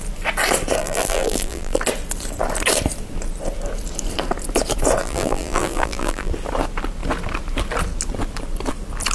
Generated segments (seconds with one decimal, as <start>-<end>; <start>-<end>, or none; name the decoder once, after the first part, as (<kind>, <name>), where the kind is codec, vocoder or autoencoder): 0.8-1.8 (vocoder, BigVGAN v2); 5.0-6.3